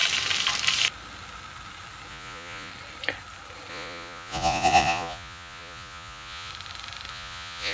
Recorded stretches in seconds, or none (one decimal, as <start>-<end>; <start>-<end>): 0.0-2.1; 2.7-3.7; 6.5-7.1